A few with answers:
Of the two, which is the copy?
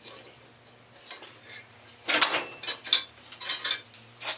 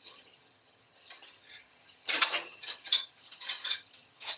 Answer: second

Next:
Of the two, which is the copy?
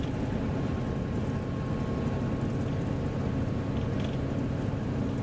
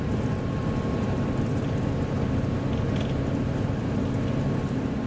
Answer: second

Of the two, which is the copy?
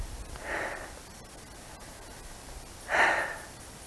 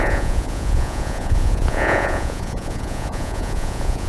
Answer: second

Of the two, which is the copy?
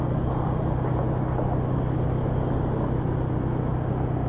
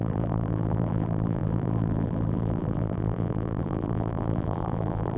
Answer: second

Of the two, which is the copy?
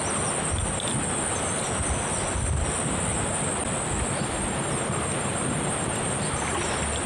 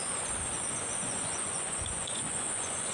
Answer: second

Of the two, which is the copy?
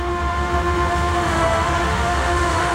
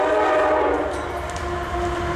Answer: first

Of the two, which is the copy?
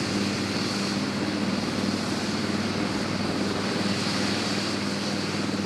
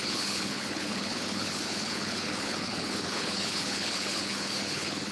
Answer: second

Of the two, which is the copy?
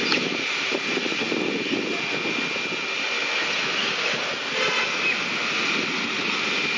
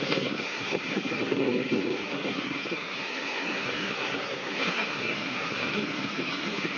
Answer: second